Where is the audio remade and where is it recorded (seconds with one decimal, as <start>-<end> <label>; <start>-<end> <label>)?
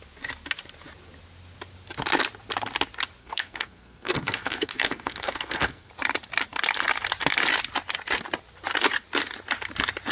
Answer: 0.0-3.2 recorded; 3.2-5.9 remade; 5.9-10.1 recorded